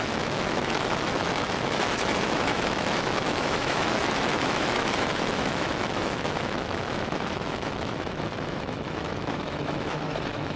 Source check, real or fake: fake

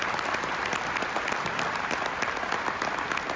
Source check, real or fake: real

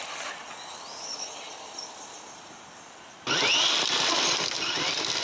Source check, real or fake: real